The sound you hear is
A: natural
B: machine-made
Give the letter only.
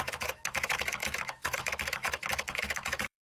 B